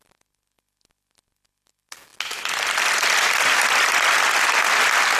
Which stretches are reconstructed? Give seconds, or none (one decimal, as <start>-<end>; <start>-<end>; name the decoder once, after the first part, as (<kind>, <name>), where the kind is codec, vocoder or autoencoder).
none